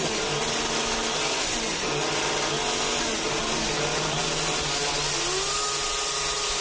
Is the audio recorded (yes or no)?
yes